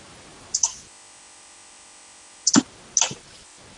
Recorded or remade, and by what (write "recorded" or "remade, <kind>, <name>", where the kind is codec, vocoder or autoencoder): recorded